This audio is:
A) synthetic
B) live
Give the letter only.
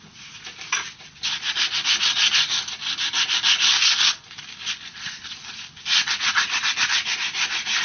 B